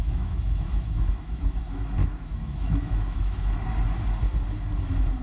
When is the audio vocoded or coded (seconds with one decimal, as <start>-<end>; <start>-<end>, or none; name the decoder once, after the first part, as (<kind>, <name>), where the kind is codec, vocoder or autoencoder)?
0.0-1.6 (autoencoder, DAC-VAE); 2.0-3.5